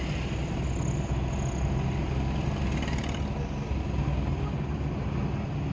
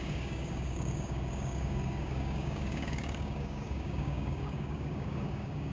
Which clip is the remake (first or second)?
second